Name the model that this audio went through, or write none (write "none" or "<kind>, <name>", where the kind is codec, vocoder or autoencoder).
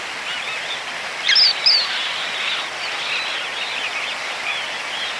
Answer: none